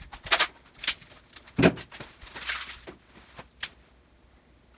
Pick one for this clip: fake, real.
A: real